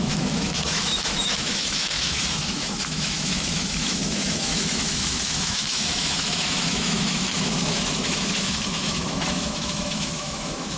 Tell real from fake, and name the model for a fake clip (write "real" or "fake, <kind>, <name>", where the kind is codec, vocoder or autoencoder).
fake, autoencoder, DAC-VAE